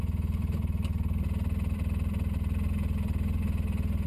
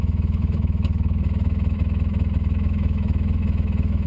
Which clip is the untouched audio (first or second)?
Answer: first